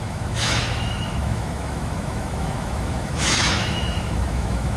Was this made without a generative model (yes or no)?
no